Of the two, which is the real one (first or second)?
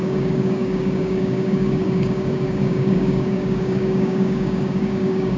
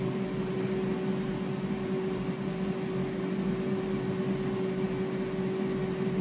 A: second